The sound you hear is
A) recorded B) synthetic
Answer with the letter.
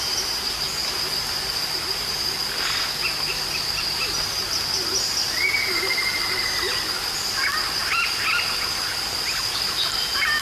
B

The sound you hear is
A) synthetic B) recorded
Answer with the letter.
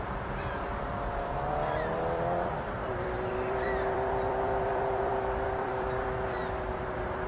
A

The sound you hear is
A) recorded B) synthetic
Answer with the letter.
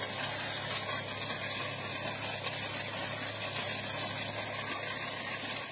A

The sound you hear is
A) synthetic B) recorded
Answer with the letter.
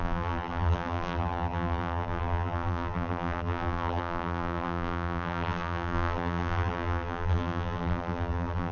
A